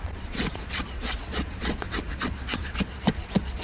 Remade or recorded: remade